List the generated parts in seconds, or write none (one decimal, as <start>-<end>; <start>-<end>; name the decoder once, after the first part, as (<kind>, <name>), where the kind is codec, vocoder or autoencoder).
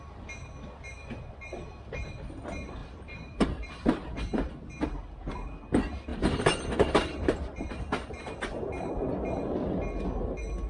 2.8-4.5 (vocoder, BigVGAN v2); 6.1-8.9